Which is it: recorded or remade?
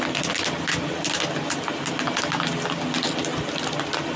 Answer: recorded